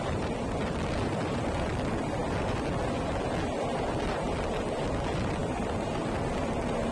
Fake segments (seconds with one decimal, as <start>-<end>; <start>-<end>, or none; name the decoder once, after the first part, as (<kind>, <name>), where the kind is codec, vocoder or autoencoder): none